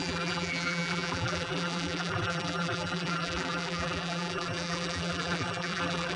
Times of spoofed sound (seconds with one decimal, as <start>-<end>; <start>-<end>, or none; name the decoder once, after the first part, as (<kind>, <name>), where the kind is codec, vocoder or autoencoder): 0.0-6.2 (vocoder, BigVGAN v2)